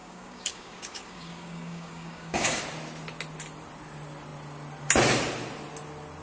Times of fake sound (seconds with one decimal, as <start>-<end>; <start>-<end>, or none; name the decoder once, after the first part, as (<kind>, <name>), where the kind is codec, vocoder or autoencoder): 0.0-2.6 (codec, DAC)